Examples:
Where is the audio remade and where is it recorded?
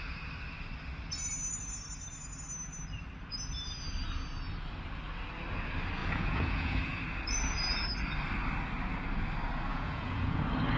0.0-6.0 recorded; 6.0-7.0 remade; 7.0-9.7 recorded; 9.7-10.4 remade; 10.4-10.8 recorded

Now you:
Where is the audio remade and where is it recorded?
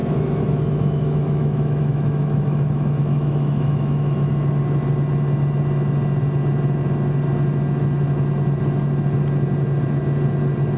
0.0-4.3 remade; 4.3-10.8 recorded